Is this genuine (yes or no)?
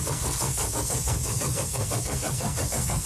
no